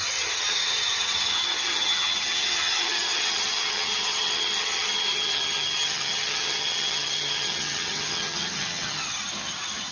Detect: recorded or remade remade